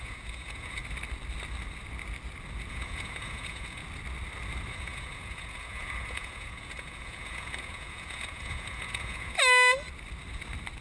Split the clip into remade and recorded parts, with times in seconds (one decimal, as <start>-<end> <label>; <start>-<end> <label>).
0.0-0.8 remade; 0.8-2.7 recorded; 2.7-3.8 remade; 3.8-4.7 recorded; 4.7-9.4 remade; 9.4-10.8 recorded